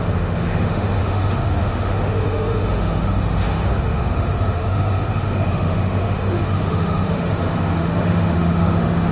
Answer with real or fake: fake